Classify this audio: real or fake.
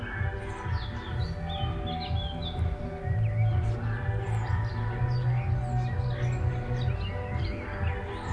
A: real